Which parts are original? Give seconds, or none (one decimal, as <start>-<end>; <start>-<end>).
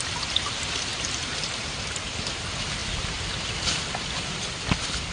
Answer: 0.0-0.9; 2.4-5.1